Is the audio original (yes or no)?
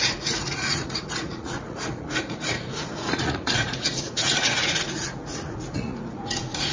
no